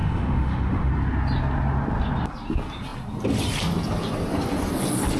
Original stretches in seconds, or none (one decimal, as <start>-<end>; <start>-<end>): 0.9-5.2